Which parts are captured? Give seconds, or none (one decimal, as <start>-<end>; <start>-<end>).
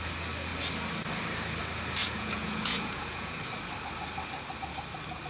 0.0-2.0; 3.4-5.3